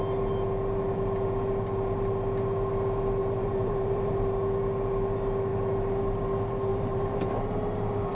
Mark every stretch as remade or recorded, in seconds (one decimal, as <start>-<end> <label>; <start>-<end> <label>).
0.0-3.2 recorded; 3.2-4.3 remade; 4.3-6.7 recorded; 6.7-8.1 remade